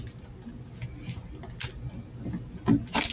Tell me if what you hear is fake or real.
real